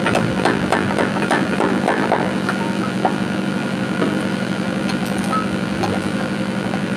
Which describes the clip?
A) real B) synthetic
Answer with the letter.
B